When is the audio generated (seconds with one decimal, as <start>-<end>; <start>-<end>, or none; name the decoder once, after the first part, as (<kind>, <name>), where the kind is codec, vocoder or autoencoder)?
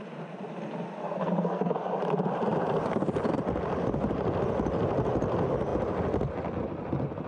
1.0-2.0 (codec, SNAC)